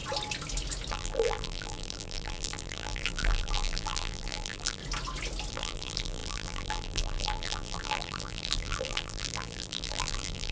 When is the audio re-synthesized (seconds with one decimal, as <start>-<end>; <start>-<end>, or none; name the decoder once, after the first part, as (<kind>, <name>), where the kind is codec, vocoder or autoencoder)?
0.9-4.8 (vocoder, BigVGAN v2); 5.5-10.5